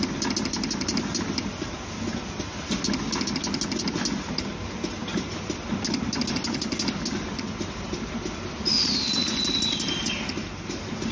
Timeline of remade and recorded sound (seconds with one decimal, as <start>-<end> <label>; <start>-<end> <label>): 0.0-11.1 recorded